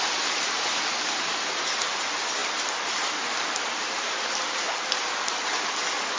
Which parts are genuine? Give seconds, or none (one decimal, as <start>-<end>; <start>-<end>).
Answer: 0.0-6.2